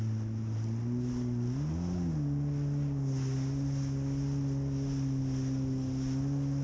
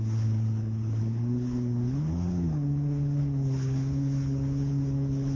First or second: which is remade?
second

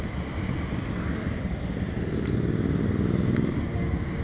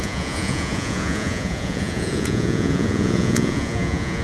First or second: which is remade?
second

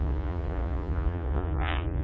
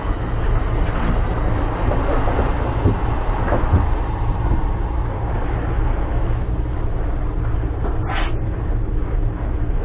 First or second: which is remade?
first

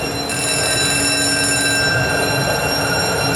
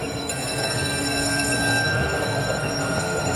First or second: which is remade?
second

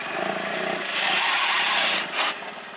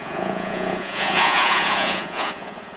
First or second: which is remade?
second